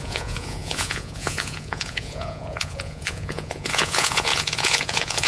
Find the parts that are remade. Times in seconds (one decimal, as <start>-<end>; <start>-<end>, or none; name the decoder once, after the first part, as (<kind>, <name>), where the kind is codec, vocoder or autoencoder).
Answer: 0.0-5.3 (vocoder, Vocos)